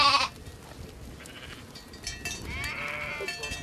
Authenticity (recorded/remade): recorded